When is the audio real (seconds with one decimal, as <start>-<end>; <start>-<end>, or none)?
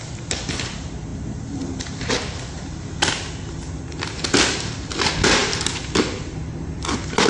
0.0-7.3